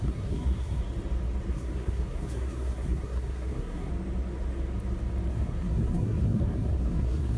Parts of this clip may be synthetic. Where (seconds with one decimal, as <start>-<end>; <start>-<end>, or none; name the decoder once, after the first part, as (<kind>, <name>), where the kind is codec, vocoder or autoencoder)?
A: 0.0-0.8 (codec, SNAC); 1.5-3.9; 5.3-7.4